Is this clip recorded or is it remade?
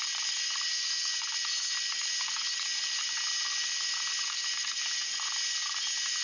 recorded